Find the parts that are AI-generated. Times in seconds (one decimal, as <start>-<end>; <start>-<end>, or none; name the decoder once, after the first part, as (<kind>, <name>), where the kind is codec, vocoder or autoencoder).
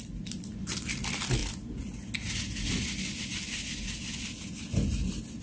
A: none